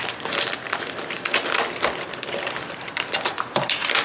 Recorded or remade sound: remade